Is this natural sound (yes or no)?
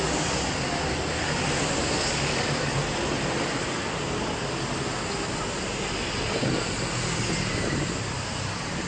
yes